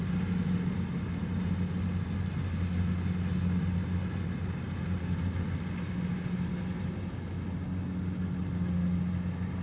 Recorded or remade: recorded